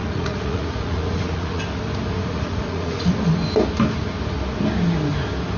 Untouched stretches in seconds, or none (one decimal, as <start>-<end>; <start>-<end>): 1.6-2.2; 3.1-5.6